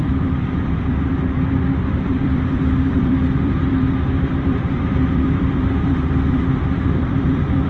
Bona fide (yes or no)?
no